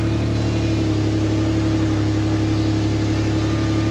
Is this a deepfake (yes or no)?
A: no